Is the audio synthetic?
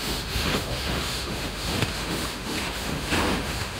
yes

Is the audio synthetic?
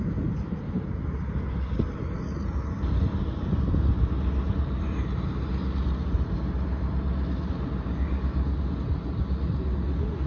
no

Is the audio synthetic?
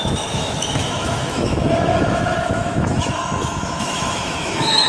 yes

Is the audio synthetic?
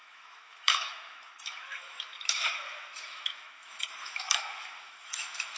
yes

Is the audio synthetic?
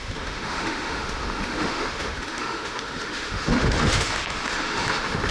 yes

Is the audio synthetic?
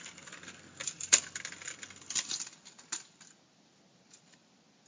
no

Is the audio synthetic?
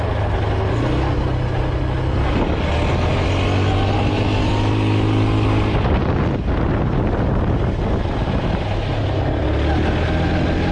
no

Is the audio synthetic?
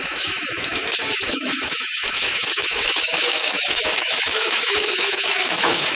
yes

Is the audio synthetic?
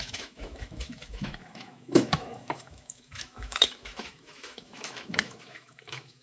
yes